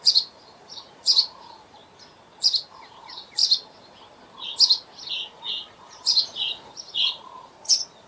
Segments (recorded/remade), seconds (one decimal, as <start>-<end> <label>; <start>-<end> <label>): 0.0-1.8 remade; 1.8-2.7 recorded; 2.7-3.4 remade; 3.4-5.1 recorded; 5.1-8.1 remade